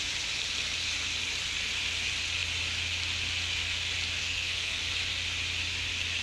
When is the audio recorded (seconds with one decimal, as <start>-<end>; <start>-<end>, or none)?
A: 0.0-4.2; 4.8-6.2